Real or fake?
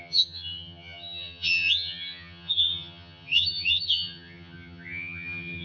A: fake